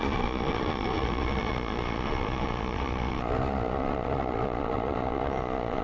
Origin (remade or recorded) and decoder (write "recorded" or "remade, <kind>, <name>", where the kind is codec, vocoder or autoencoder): remade, vocoder, Vocos